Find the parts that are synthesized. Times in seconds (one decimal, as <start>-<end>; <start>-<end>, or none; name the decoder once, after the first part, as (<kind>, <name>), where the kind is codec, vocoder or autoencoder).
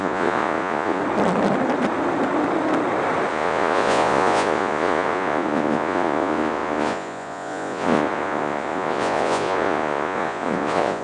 0.0-1.0 (vocoder, Vocos); 3.3-11.0